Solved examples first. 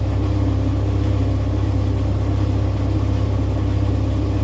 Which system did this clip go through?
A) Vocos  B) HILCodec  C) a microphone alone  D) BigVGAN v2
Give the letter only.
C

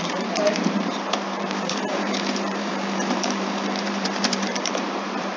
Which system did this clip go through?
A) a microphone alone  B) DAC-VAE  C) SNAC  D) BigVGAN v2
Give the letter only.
D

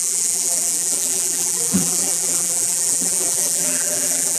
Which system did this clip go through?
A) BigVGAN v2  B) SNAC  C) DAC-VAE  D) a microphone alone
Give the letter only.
A